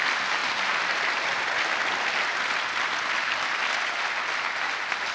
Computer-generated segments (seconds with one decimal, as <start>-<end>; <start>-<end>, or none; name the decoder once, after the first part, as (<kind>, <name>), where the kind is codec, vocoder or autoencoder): none